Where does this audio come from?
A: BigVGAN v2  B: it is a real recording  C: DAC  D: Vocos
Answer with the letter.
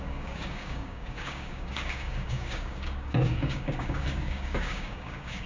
C